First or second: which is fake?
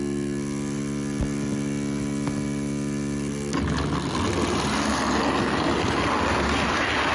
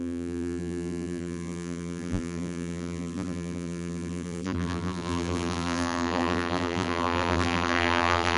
second